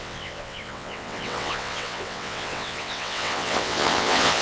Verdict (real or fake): fake